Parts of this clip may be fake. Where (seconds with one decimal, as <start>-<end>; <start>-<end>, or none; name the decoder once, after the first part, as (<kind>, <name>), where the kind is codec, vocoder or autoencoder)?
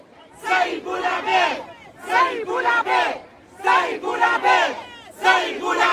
none